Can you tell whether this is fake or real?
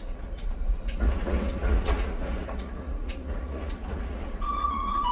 fake